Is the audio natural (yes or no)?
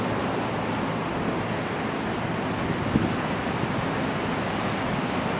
yes